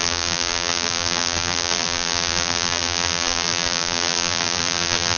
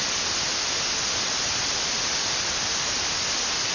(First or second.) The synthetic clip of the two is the first